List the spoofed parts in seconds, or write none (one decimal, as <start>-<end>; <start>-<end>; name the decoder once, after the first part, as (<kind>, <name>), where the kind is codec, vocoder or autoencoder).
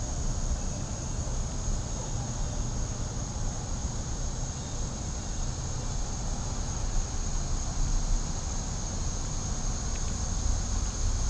3.8-6.4 (vocoder, BigVGAN v2)